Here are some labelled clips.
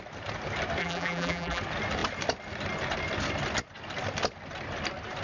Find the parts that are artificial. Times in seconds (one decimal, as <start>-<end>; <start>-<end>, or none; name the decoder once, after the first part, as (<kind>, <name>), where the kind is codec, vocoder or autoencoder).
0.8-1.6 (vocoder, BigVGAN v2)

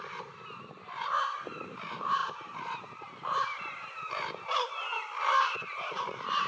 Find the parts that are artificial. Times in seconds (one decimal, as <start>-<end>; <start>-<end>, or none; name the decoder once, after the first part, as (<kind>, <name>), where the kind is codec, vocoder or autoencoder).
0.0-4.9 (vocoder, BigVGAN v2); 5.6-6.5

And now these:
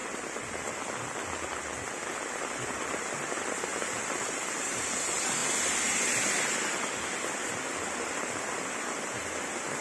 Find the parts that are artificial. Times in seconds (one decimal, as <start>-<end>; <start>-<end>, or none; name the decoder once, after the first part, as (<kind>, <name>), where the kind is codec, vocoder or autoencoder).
none

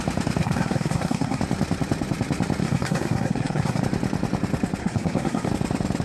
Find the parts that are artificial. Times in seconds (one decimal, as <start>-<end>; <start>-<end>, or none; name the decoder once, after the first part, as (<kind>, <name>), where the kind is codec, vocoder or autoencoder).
0.4-1.4 (codec, SNAC); 2.6-3.8; 4.8-5.5

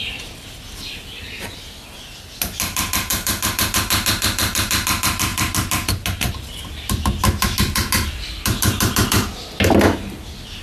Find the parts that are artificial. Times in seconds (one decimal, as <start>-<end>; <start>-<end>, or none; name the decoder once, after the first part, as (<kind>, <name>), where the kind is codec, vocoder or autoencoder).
3.1-4.7 (vocoder, BigVGAN v2)

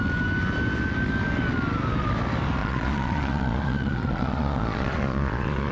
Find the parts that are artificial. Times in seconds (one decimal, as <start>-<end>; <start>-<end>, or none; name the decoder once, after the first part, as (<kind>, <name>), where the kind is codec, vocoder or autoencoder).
2.6-5.7 (vocoder, Vocos)